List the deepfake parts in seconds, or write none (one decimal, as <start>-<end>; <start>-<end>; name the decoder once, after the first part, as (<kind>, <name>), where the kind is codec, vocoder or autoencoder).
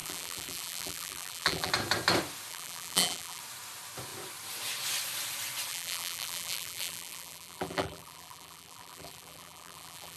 0.0-1.7 (vocoder, BigVGAN v2); 2.5-3.4; 5.7-10.2